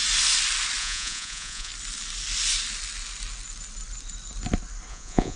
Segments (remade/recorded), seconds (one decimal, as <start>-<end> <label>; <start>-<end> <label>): 0.0-0.8 recorded; 0.8-1.7 remade; 1.7-4.9 recorded; 4.9-5.4 remade